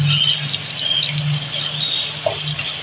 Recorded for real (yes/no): yes